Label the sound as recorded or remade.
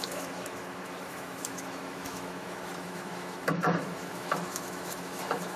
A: remade